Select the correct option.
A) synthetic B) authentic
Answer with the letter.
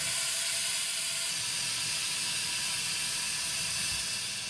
B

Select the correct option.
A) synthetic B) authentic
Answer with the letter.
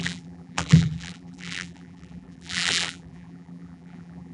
A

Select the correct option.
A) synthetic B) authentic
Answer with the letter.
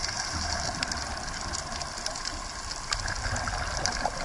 B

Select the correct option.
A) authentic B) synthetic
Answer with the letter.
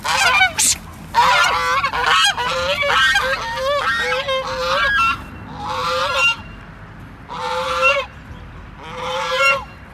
A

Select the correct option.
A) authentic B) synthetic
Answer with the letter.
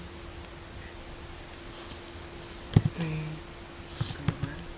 A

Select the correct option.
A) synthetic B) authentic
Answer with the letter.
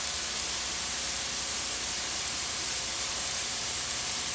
A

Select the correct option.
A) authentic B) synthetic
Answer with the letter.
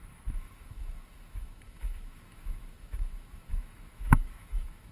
B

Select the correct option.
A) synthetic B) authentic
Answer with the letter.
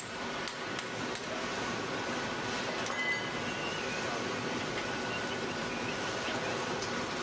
B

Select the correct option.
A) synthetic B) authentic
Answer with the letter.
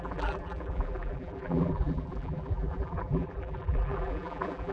A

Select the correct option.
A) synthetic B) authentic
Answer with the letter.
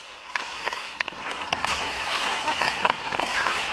A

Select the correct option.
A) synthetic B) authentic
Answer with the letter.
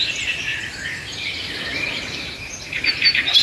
A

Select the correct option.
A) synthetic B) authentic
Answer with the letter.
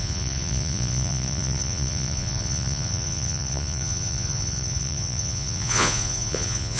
A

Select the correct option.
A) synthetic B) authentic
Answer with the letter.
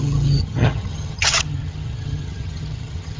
A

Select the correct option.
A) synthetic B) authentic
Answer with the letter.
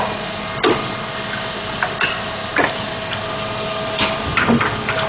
B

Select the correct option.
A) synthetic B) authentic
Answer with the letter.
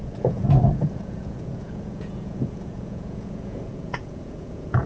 A